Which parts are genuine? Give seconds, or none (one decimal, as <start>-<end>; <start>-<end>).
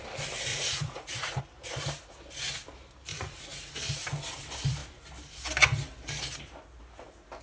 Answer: 0.0-0.5; 1.4-3.1; 3.7-7.4